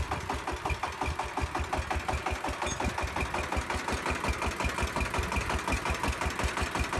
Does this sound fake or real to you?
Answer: real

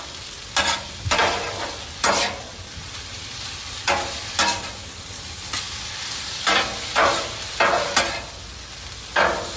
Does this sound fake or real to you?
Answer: real